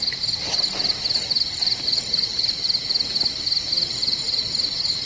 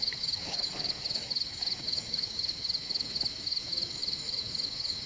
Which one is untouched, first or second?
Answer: first